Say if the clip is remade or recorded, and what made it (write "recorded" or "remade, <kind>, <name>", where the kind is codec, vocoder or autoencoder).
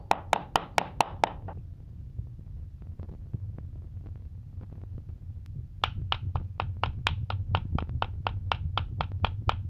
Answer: recorded